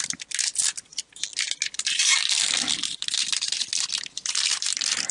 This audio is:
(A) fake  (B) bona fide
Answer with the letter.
B